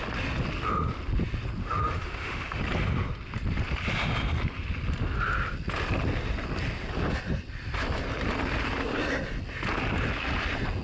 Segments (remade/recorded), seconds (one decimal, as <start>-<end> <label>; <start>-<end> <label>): 0.0-1.6 recorded; 1.6-2.6 remade; 2.6-10.8 recorded